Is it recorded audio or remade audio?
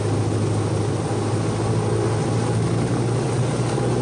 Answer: recorded